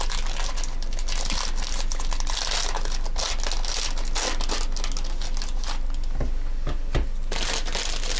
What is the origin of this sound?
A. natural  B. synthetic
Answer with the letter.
A